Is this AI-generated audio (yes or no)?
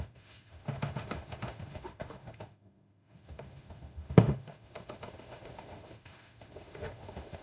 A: yes